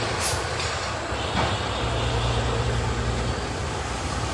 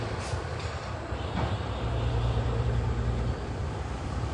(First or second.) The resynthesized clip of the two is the second